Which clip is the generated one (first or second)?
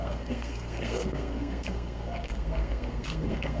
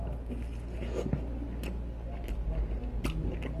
first